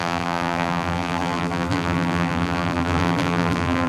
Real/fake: fake